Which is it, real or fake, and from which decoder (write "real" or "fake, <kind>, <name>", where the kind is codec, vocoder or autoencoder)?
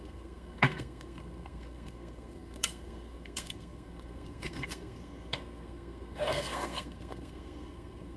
fake, codec, SNAC